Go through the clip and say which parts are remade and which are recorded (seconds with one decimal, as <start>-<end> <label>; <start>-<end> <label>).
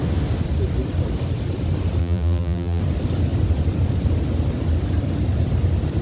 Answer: 0.0-2.0 recorded; 2.0-2.8 remade; 2.8-6.0 recorded